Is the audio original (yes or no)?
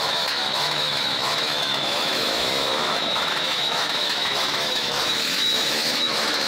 no